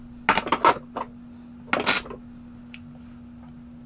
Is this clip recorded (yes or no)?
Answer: yes